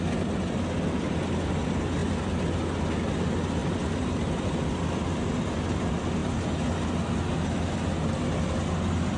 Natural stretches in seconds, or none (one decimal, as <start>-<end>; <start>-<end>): 0.0-9.2